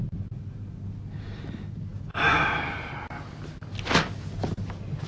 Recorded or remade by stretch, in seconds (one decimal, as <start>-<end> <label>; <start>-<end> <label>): 0.0-5.1 recorded